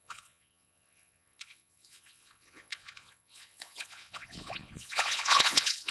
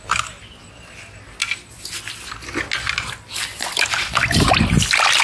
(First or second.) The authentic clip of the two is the second